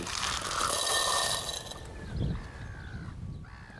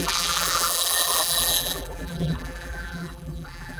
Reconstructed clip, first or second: second